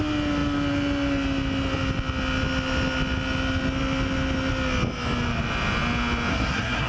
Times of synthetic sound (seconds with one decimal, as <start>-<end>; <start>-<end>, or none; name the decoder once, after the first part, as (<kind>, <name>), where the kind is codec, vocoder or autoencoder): 6.3-6.9 (codec, SNAC)